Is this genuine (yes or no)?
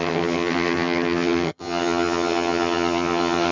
no